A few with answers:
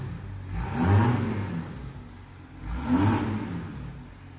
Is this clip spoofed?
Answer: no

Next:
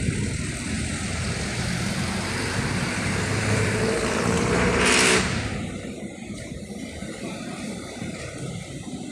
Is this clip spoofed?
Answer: yes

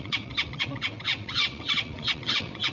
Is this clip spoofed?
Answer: yes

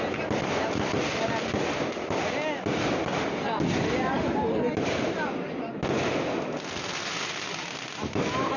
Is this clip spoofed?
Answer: no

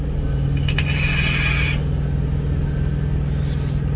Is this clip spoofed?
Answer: no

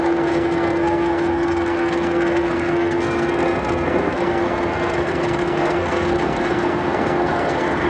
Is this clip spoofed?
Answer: yes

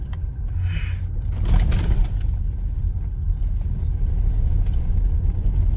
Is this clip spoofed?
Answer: no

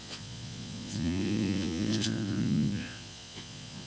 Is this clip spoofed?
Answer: yes